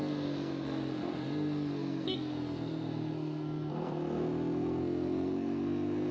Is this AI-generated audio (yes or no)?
yes